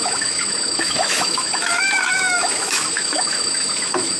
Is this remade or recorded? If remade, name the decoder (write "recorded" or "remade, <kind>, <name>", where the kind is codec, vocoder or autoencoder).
remade, autoencoder, DAC-VAE